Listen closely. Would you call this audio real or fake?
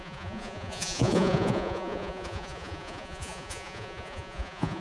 fake